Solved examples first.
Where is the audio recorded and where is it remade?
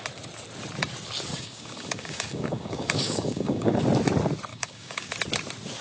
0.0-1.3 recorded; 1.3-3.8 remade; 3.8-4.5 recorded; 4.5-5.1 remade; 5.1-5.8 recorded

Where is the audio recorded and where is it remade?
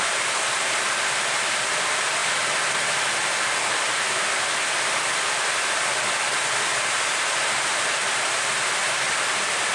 0.0-9.7 recorded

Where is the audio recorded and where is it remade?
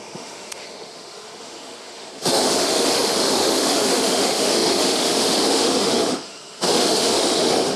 0.0-7.8 remade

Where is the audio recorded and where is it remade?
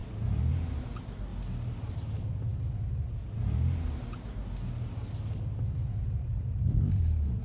0.0-0.5 recorded; 0.5-1.3 remade; 1.3-1.9 recorded; 1.9-2.5 remade; 2.5-5.6 recorded; 5.6-7.4 remade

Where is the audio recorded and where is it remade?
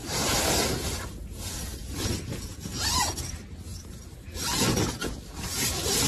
0.0-1.8 recorded; 1.8-3.2 remade; 3.2-3.7 recorded; 3.7-5.2 remade; 5.2-6.1 recorded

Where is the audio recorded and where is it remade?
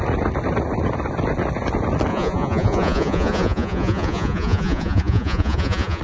0.0-2.1 recorded; 2.1-6.0 remade